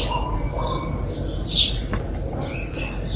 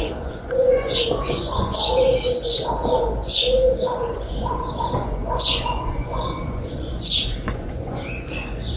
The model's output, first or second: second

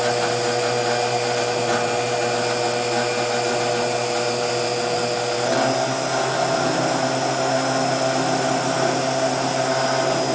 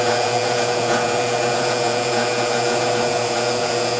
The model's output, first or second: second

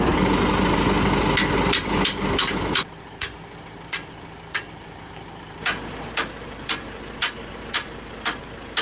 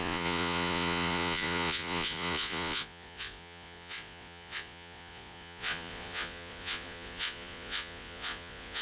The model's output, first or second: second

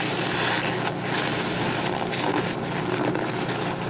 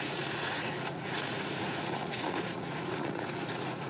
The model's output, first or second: second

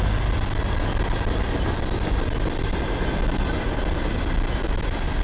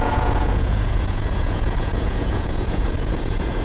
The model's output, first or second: second